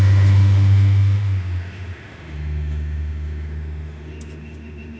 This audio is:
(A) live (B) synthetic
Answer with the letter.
B